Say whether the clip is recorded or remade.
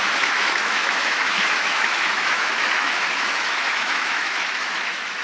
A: remade